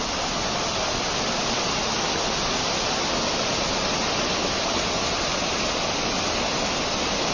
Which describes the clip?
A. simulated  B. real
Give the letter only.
B